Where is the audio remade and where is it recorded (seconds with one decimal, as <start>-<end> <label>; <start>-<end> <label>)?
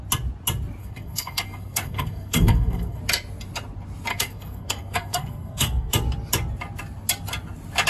0.0-0.8 recorded; 0.8-3.0 remade; 3.0-4.1 recorded; 4.1-5.9 remade; 5.9-7.9 recorded